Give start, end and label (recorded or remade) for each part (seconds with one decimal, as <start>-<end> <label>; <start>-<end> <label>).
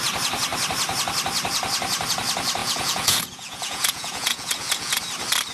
0.0-2.6 recorded; 2.6-5.0 remade; 5.0-5.5 recorded